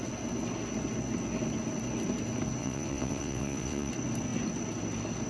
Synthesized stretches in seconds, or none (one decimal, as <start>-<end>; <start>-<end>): 2.6-3.9